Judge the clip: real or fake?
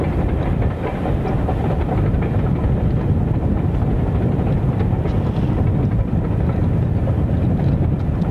real